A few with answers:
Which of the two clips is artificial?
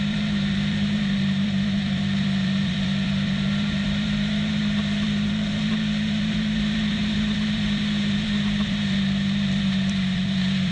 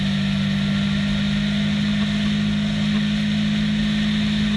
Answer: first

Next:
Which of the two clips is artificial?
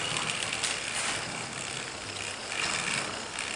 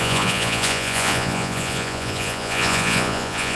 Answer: second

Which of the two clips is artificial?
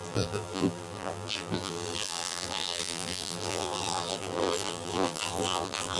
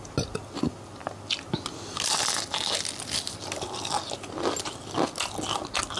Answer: first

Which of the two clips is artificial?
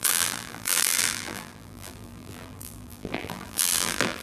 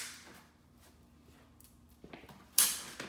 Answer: first